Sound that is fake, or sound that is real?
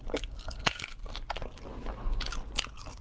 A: real